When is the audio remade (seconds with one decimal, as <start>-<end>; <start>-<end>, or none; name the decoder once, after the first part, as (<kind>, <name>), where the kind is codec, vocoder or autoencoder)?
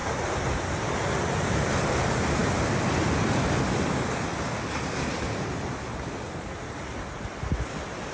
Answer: none